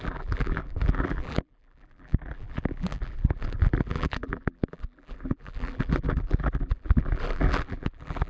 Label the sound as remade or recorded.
remade